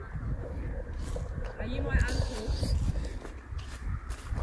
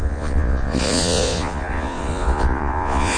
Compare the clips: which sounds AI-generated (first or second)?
second